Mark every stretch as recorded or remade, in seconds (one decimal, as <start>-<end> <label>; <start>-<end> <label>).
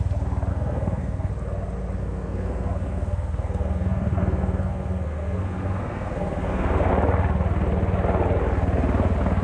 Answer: 0.0-0.5 recorded; 0.5-1.3 remade; 1.3-2.0 recorded; 2.0-6.9 remade; 6.9-9.4 recorded